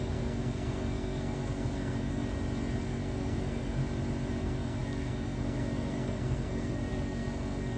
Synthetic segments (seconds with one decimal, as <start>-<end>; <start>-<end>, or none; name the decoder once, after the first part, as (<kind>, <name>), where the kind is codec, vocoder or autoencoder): 0.0-2.2 (codec, SNAC); 2.8-3.8; 4.3-7.8